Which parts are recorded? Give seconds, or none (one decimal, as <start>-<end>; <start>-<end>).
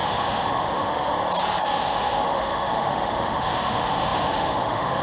1.1-1.6